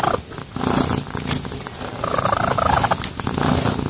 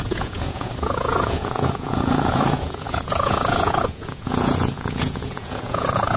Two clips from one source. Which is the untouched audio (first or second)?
first